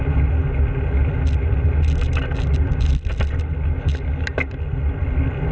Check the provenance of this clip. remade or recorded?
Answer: recorded